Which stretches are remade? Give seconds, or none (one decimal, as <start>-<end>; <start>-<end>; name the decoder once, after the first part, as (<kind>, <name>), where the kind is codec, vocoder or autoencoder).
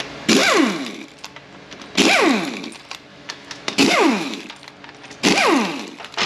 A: 3.1-4.4 (autoencoder, DAC-VAE)